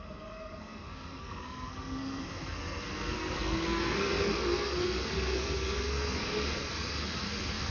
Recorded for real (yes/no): no